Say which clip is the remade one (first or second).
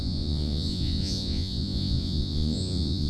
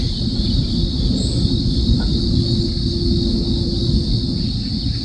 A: first